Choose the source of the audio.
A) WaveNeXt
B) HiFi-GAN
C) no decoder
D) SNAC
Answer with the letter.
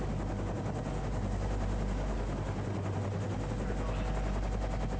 C